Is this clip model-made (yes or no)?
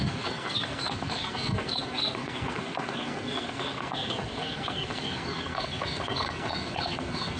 yes